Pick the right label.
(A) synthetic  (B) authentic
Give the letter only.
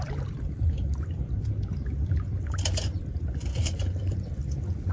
A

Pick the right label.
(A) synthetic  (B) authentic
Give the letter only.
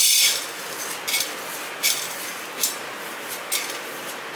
B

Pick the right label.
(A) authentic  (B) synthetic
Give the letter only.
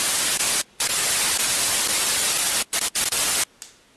A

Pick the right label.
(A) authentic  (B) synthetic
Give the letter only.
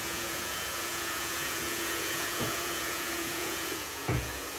B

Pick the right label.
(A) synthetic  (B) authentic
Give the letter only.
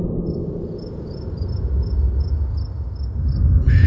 B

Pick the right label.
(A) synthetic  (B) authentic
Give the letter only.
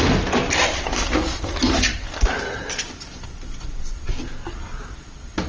A